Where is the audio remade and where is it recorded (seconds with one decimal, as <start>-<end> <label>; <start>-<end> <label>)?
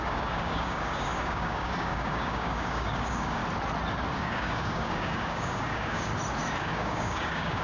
0.0-3.4 remade; 3.4-4.1 recorded; 4.1-6.1 remade; 6.1-6.6 recorded; 6.6-7.6 remade